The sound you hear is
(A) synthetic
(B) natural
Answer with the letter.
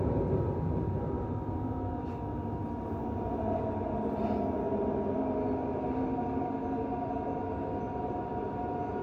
B